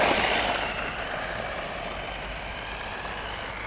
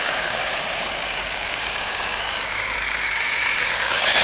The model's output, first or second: second